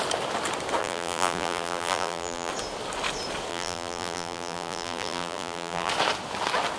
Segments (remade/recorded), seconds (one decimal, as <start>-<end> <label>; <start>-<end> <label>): 0.0-0.8 recorded; 0.8-2.5 remade; 2.5-3.5 recorded; 3.5-5.9 remade; 5.9-6.8 recorded